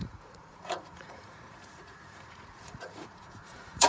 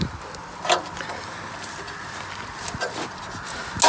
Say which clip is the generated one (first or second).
first